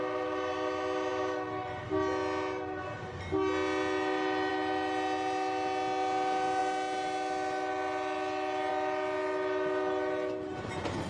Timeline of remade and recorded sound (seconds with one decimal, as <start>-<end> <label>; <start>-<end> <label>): 0.0-11.1 recorded